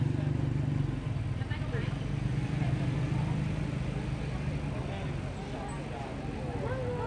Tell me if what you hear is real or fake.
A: real